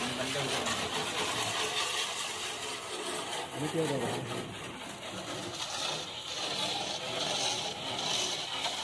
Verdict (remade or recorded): recorded